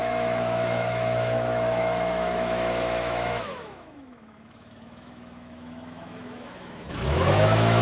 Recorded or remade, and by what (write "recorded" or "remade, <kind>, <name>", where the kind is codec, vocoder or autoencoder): remade, autoencoder, DAC-VAE